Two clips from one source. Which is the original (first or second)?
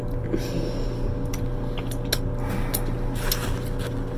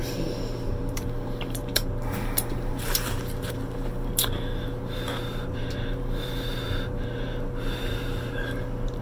first